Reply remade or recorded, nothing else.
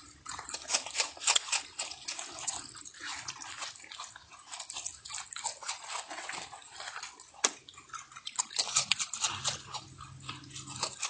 recorded